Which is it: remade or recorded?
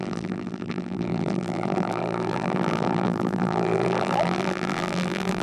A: remade